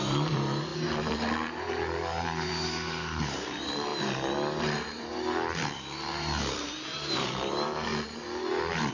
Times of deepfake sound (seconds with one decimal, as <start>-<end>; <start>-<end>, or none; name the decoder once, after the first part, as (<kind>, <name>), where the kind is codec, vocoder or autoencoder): 0.0-3.9 (vocoder, BigVGAN v2); 4.6-8.9